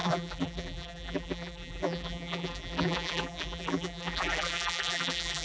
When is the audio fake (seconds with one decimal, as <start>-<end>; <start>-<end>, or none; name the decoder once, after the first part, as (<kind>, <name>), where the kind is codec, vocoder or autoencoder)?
0.0-5.4 (vocoder, BigVGAN v2)

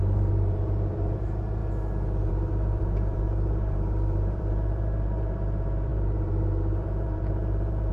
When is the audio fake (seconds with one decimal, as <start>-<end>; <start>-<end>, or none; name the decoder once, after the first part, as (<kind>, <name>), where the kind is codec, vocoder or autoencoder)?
0.0-1.6 (vocoder, BigVGAN v2); 2.3-7.9

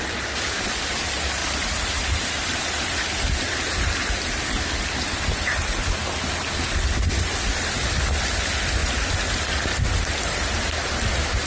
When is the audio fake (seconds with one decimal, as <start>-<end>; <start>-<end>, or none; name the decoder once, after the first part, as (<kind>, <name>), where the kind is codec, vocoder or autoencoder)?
8.8-11.5 (vocoder, BigVGAN v2)

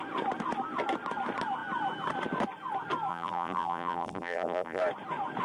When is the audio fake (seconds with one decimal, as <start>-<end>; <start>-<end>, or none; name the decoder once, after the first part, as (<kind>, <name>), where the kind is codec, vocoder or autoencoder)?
3.1-4.8 (vocoder, BigVGAN v2)

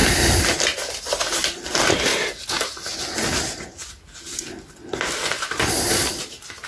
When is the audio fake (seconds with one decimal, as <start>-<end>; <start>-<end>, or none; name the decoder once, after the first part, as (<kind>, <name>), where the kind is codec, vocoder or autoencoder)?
0.0-1.0 (vocoder, BigVGAN v2)

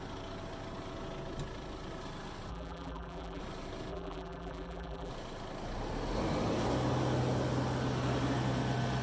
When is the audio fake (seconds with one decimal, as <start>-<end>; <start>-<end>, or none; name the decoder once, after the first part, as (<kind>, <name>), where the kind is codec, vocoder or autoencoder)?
2.5-3.4 (vocoder, BigVGAN v2); 3.9-5.1